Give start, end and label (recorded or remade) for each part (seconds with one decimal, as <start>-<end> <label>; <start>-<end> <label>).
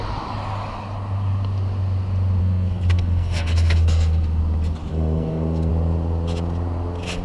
0.0-2.4 recorded; 2.4-4.4 remade; 4.4-4.9 recorded; 4.9-5.7 remade; 5.7-7.2 recorded